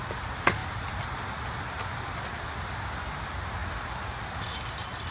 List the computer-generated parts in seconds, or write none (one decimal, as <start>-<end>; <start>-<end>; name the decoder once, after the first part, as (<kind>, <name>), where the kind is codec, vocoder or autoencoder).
none